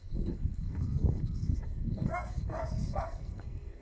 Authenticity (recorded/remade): remade